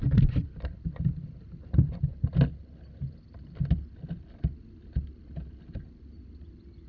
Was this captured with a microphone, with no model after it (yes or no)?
yes